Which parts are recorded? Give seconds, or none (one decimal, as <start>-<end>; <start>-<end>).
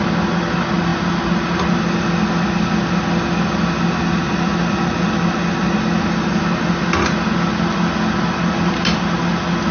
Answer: 0.0-9.7